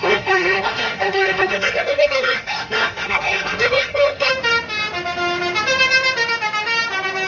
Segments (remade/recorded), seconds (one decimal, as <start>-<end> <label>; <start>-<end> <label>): 0.0-4.3 remade; 4.3-7.3 recorded